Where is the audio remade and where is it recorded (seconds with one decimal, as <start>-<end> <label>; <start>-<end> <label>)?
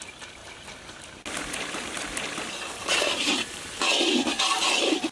0.0-0.4 remade; 0.4-1.4 recorded; 1.4-5.1 remade